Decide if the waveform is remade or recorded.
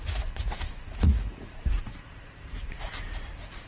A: remade